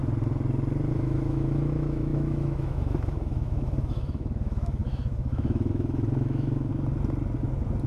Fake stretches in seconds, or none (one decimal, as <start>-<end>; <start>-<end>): 0.9-6.7